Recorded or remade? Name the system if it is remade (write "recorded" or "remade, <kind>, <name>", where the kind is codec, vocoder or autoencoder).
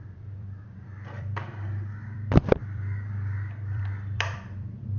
remade, vocoder, BigVGAN v2